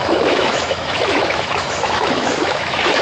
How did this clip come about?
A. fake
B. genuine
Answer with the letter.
A